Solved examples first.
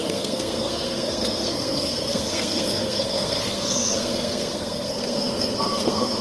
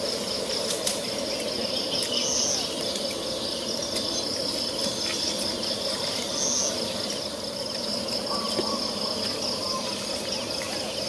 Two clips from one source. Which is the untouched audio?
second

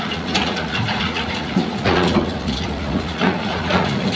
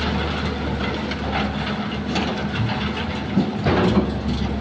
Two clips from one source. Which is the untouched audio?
second